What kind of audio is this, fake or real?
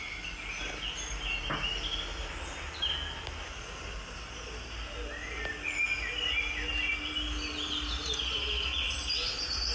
real